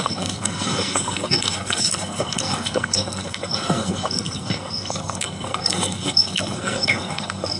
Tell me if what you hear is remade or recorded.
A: remade